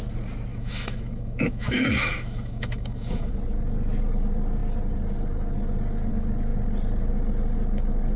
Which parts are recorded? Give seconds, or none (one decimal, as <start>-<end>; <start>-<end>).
0.0-0.5; 3.3-8.2